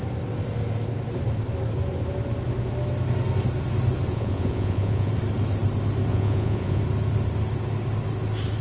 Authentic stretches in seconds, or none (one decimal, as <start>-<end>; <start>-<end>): 0.0-4.1; 5.1-6.1; 6.8-8.6